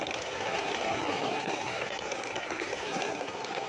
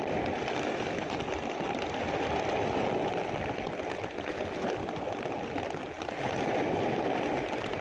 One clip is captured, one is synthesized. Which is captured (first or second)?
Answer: second